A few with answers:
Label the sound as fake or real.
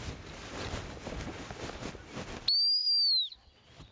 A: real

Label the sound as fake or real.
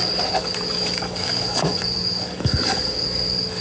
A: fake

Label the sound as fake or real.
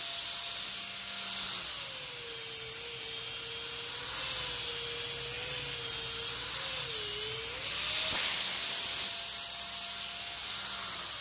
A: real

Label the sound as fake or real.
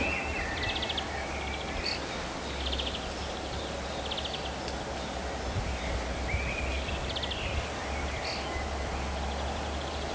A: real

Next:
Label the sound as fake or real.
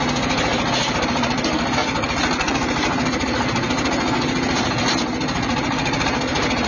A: real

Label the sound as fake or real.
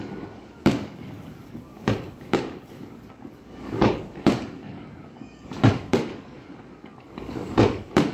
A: fake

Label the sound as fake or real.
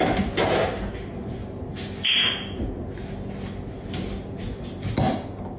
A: real